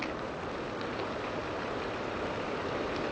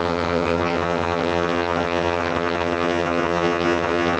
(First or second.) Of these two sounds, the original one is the first